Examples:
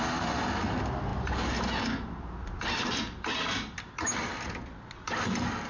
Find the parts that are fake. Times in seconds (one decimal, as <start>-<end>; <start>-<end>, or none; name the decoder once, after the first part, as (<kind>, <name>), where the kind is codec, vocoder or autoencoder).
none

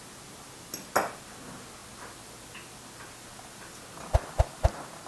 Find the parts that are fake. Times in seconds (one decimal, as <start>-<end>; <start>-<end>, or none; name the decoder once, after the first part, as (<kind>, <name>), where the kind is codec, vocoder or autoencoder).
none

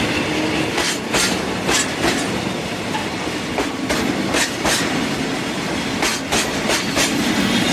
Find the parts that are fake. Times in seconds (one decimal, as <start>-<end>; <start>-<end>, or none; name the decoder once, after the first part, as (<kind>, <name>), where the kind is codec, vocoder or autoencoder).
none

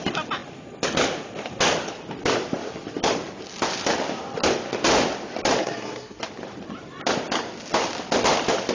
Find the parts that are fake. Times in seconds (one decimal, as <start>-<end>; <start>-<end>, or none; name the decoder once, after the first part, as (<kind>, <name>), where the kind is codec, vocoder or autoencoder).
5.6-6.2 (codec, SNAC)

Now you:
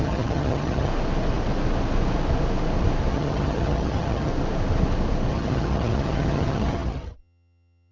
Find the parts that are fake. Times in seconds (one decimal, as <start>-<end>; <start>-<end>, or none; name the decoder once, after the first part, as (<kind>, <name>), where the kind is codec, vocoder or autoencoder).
0.0-0.9 (vocoder, HiFi-GAN); 3.1-4.3; 5.3-7.9

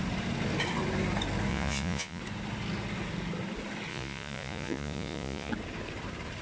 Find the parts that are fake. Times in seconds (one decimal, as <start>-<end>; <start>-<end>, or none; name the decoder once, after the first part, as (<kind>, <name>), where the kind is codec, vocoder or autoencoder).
1.5-2.2 (vocoder, Vocos); 3.9-5.5